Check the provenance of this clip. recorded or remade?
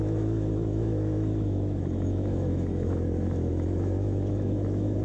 remade